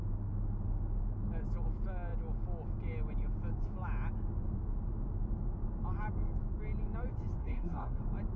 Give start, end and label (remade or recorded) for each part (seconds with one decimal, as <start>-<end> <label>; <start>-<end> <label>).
0.0-7.4 recorded; 7.4-8.0 remade; 8.0-8.4 recorded

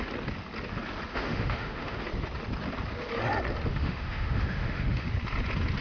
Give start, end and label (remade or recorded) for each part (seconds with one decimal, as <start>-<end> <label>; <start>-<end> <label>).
0.0-1.1 recorded; 1.1-2.0 remade; 2.0-3.7 recorded; 3.7-5.1 remade; 5.1-5.8 recorded